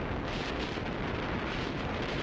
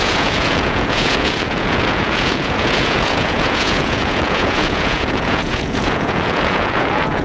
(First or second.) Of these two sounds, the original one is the first